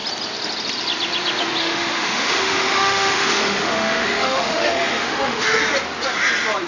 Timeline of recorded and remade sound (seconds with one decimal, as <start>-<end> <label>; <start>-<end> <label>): 0.0-1.6 recorded; 1.6-5.6 remade; 5.6-6.7 recorded